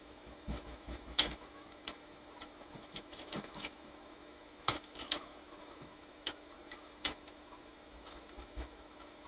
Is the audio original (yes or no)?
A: no